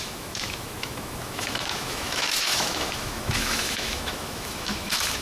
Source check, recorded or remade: remade